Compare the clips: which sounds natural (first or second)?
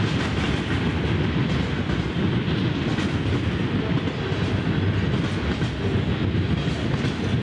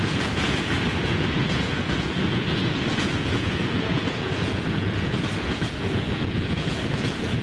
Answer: first